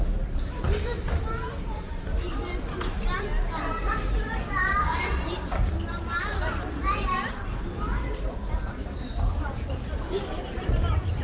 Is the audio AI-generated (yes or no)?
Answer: yes